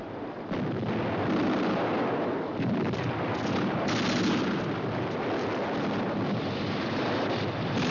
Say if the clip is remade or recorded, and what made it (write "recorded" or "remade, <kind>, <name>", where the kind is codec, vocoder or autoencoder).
remade, vocoder, BigVGAN v2